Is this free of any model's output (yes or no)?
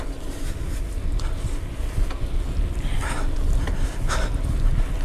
yes